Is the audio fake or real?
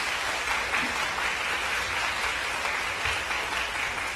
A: real